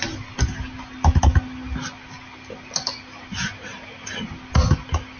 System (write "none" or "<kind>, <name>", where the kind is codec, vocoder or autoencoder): none